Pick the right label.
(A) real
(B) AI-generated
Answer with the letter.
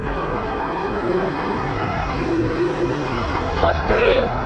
B